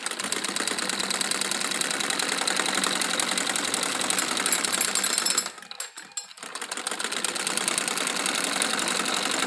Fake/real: real